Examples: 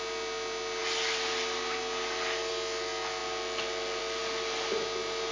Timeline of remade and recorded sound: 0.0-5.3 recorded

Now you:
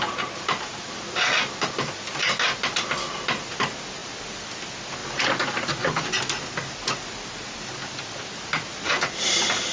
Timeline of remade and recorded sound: 0.0-9.7 recorded

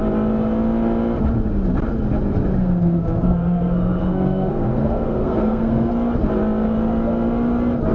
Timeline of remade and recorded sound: 0.0-2.6 recorded; 2.6-5.9 remade; 5.9-7.9 recorded

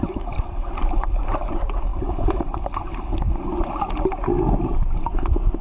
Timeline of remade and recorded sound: 0.0-5.6 recorded

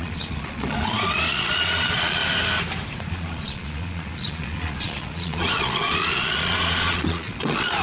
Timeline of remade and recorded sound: 0.0-2.2 remade; 2.2-3.1 recorded; 3.1-7.8 remade

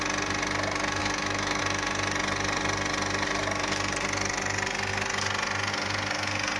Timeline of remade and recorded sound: 0.0-1.0 recorded; 1.0-1.6 remade; 1.6-6.6 recorded

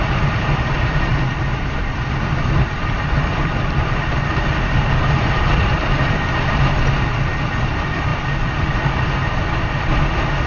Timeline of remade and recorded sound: 0.0-10.5 recorded

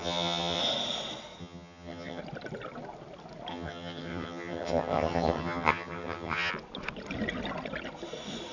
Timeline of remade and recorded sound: 0.0-0.6 remade; 0.6-1.4 recorded; 1.4-2.2 remade; 2.2-3.5 recorded; 3.5-6.5 remade; 6.5-8.5 recorded